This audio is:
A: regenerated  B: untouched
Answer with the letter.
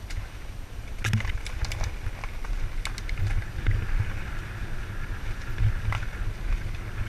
B